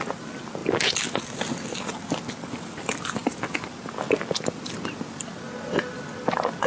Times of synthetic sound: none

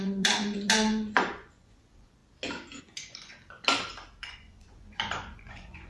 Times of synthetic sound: 0.0-2.2 (vocoder, Vocos); 2.8-3.3; 4.2-5.9

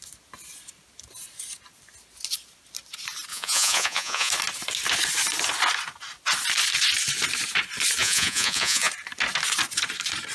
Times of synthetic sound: 3.3-4.3 (vocoder, Vocos); 8.0-8.9

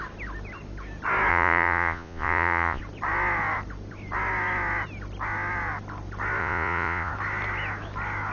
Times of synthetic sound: 1.3-2.8 (vocoder, Vocos); 6.4-7.1

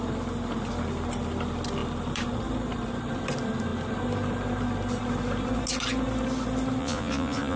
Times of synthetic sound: 6.8-7.6 (vocoder, Vocos)

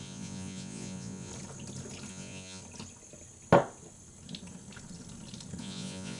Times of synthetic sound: 0.0-1.3 (vocoder, Vocos); 2.1-2.6; 5.6-6.2

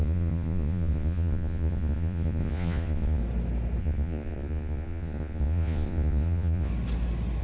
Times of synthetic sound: 0.0-3.2 (vocoder, Vocos); 3.8-6.7